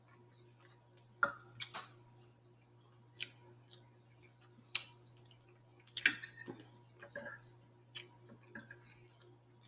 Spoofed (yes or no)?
no